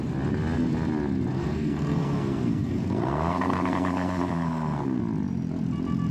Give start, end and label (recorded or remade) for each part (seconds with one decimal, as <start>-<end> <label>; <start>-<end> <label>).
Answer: 0.0-1.3 recorded; 1.3-5.0 remade; 5.0-6.1 recorded